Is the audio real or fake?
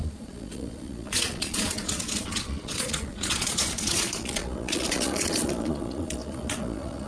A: fake